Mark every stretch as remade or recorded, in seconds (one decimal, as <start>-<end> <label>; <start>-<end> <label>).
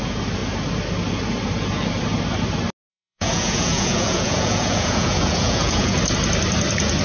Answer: 0.0-2.9 recorded; 2.9-6.0 remade; 6.0-7.0 recorded